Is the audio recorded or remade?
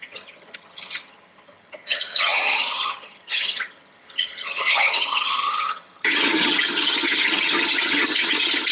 remade